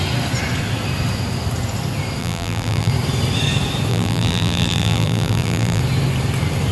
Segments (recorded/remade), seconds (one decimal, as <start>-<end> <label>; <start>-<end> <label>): 0.0-2.2 recorded; 2.2-2.9 remade; 2.9-3.9 recorded; 3.9-5.8 remade; 5.8-6.7 recorded